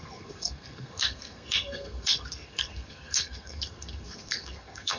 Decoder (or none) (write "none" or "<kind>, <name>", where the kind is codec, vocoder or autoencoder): codec, SNAC